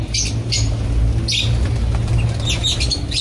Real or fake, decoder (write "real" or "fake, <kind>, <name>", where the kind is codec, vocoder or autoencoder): real